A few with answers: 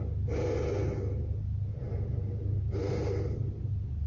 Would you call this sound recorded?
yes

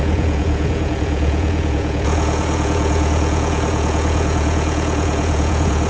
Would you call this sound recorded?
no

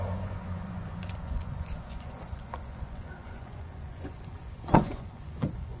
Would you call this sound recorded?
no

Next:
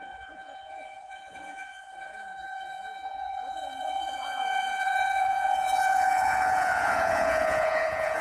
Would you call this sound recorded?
no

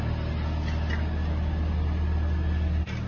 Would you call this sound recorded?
yes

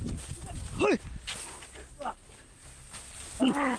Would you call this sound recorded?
yes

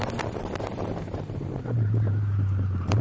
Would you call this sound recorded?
yes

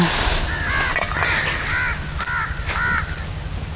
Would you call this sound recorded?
yes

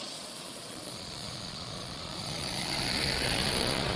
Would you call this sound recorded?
no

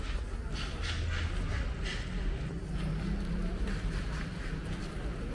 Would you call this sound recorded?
yes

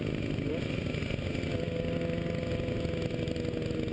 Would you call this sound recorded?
yes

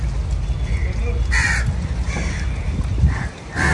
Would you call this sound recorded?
yes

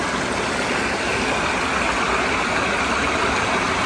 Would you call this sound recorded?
yes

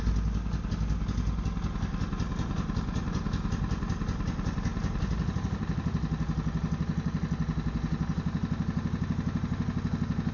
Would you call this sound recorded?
yes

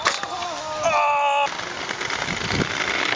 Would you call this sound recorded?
yes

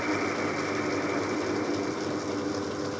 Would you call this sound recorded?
yes